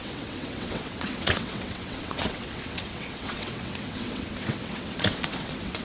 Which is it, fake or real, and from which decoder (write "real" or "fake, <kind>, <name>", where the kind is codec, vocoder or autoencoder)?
fake, vocoder, WaveNeXt